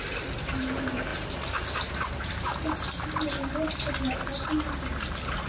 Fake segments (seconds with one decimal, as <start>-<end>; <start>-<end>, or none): none